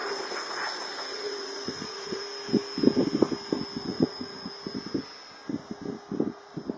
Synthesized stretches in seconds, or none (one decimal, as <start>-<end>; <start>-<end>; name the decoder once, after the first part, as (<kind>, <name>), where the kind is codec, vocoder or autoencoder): 0.0-2.2 (vocoder, Vocos); 3.9-4.5